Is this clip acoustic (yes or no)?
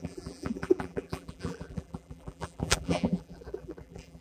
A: no